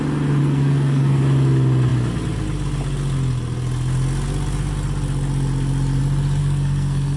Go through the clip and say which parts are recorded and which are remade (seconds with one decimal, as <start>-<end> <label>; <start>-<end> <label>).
0.0-0.4 recorded; 0.4-1.2 remade; 1.2-6.4 recorded; 6.4-7.2 remade